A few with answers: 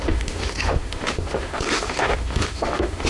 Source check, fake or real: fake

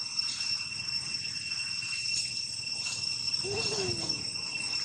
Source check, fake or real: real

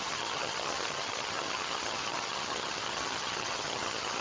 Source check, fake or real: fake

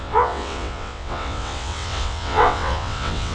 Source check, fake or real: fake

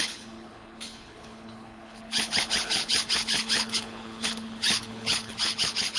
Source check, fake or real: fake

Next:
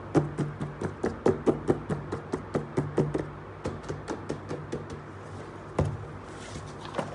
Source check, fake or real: real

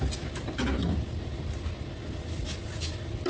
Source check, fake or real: real